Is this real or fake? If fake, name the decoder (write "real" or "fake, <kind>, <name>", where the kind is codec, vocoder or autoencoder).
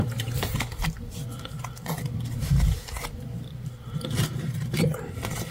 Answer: fake, vocoder, BigVGAN v2